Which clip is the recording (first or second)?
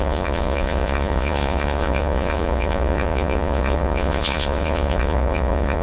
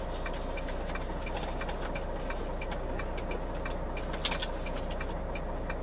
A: second